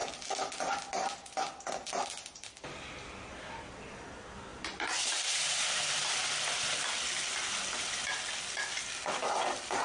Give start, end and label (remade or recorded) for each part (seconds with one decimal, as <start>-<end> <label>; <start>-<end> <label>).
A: 0.0-9.8 recorded